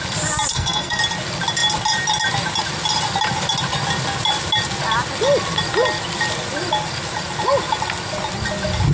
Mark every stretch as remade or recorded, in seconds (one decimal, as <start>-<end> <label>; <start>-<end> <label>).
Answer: 0.0-0.5 recorded; 0.5-1.0 remade; 1.0-8.9 recorded